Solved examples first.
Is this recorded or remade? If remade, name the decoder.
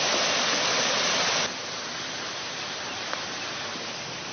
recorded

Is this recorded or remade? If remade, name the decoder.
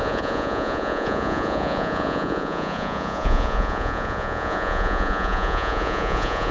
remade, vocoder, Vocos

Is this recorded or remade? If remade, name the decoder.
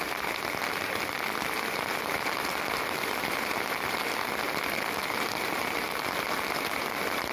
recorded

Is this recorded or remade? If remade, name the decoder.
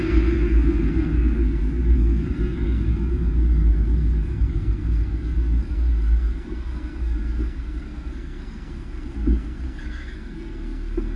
remade, codec, SNAC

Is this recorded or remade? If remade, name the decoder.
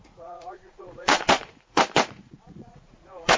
remade, vocoder, Vocos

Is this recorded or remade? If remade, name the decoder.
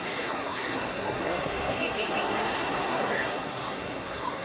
remade, codec, SNAC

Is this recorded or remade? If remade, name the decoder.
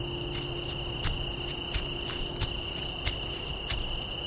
recorded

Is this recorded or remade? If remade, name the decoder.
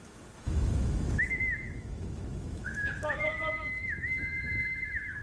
remade, autoencoder, DAC-VAE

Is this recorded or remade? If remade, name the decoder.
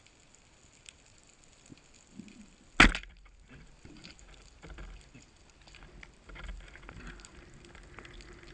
recorded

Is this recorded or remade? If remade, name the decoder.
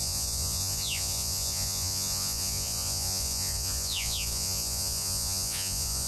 remade, vocoder, Vocos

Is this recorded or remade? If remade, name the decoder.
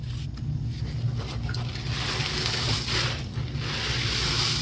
recorded